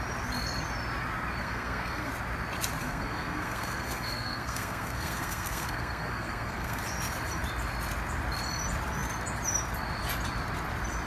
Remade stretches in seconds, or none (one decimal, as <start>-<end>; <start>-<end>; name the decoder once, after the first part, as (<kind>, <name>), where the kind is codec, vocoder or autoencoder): 1.4-2.1 (codec, SNAC); 2.8-6.8